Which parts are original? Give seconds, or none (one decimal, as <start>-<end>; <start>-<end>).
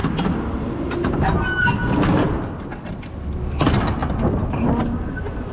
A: 0.0-5.5